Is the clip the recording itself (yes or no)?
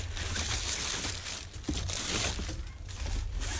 yes